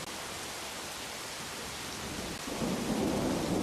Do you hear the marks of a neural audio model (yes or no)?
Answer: no